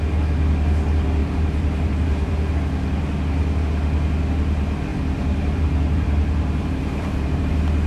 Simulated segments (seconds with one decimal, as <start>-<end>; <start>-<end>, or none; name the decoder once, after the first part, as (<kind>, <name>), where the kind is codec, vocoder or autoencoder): 1.2-2.5 (vocoder, BigVGAN v2); 4.9-7.5